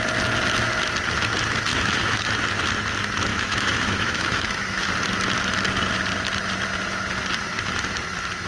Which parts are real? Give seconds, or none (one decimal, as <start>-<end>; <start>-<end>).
0.0-1.7; 2.3-3.3; 4.9-8.5